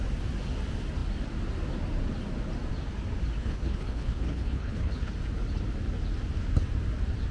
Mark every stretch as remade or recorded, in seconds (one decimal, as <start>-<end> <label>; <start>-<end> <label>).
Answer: 0.0-3.4 recorded; 3.4-5.1 remade; 5.1-7.3 recorded